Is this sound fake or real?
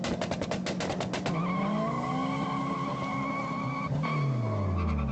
real